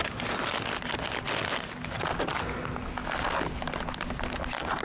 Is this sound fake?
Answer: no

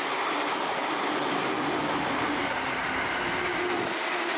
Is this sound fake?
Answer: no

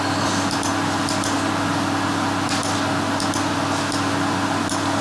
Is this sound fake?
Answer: no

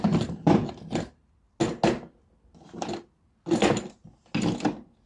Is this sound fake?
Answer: no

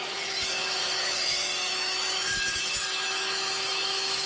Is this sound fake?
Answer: yes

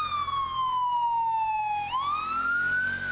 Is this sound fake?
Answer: no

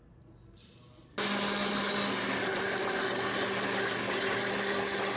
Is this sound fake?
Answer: no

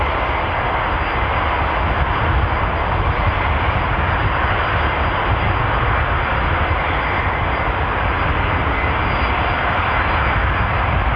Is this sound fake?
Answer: no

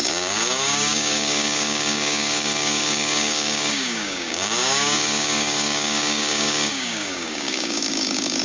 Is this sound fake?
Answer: yes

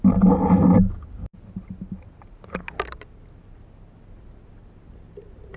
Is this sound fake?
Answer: no